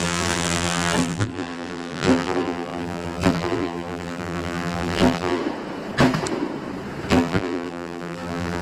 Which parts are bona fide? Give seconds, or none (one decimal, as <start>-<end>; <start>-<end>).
5.4-7.1